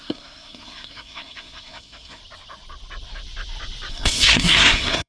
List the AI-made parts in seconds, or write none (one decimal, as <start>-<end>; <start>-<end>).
0.0-2.2; 3.9-5.1